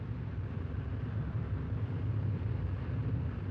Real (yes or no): no